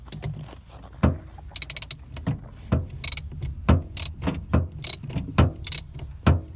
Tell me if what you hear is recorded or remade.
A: recorded